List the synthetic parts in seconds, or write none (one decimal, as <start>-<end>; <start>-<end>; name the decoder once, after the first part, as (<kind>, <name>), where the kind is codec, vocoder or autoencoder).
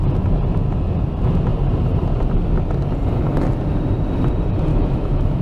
4.7-5.4 (autoencoder, DAC-VAE)